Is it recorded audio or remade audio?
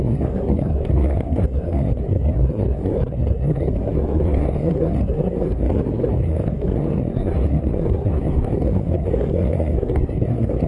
remade